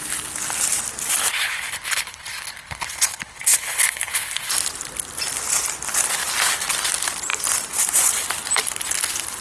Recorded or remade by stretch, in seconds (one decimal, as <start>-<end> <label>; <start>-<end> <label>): 0.0-1.3 recorded; 1.3-4.5 remade; 4.5-9.4 recorded